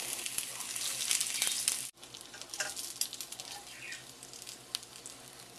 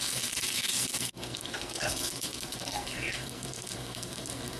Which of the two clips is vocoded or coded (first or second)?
second